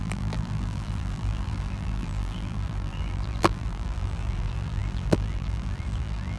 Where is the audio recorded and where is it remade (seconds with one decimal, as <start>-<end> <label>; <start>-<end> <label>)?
0.0-6.4 remade